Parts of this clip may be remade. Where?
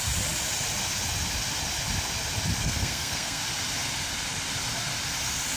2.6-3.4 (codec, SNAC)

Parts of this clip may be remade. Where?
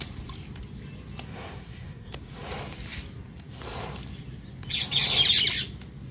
1.3-2.1 (codec, SNAC)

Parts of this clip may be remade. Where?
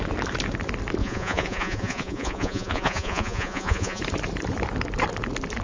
1.0-4.0 (vocoder, Vocos)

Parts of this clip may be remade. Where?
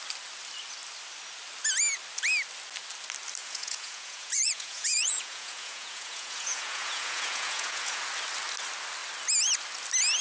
3.4-8.0 (vocoder, Vocos)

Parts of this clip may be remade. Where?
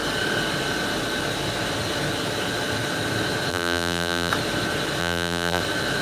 3.5-4.3 (vocoder, BigVGAN v2); 5.0-5.6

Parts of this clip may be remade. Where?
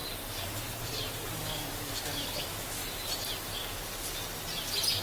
1.8-2.8 (autoencoder, DAC-VAE)